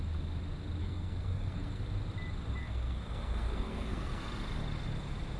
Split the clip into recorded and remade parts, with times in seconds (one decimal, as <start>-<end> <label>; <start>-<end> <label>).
0.0-0.8 recorded; 0.8-1.8 remade; 1.8-2.6 recorded; 2.6-4.2 remade; 4.2-5.4 recorded